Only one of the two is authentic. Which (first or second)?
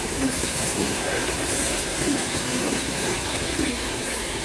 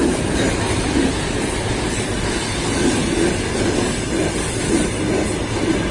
second